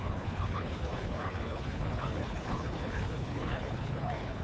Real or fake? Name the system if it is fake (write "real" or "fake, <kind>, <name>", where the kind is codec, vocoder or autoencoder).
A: fake, codec, HILCodec